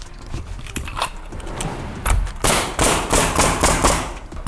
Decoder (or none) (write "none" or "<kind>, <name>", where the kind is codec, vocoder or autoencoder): none